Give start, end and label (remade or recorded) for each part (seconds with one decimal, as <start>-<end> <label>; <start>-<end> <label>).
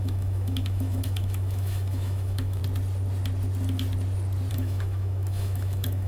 0.0-2.6 remade; 2.6-4.5 recorded; 4.5-6.1 remade